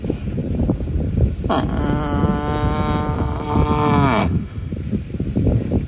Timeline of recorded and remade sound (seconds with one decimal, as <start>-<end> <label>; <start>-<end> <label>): 0.0-4.2 recorded; 4.2-4.7 remade; 4.7-5.9 recorded